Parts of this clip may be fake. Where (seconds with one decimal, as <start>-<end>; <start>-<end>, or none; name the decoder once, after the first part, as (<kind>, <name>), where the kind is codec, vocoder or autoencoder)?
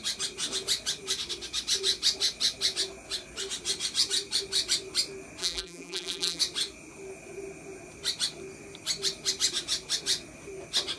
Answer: 5.4-6.4 (vocoder, BigVGAN v2)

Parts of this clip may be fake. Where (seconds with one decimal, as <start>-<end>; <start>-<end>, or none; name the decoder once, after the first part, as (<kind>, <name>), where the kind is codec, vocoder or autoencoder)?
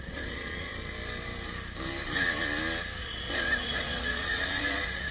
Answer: 0.0-0.7 (vocoder, Vocos); 3.0-5.1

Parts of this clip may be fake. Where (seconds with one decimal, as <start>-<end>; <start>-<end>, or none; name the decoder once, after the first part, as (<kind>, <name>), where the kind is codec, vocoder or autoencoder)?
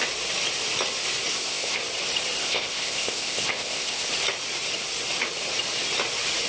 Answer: 1.3-1.8 (codec, ZipCodec); 2.4-4.1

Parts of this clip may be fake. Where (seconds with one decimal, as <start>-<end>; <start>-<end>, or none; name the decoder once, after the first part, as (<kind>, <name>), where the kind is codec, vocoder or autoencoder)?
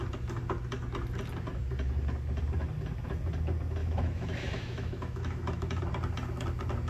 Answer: 3.8-5.8 (autoencoder, DAC-VAE)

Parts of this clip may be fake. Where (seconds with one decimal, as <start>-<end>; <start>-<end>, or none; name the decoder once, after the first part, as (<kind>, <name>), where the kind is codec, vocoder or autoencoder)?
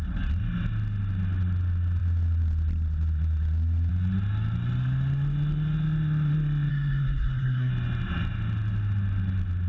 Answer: 6.7-7.7 (codec, SNAC)